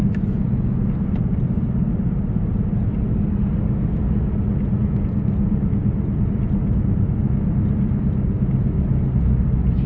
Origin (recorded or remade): recorded